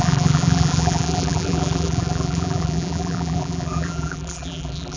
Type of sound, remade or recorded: remade